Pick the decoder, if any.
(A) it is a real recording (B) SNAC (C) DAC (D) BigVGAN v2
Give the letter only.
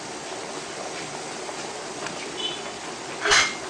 A